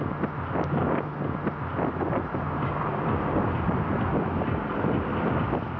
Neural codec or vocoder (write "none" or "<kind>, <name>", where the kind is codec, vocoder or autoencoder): none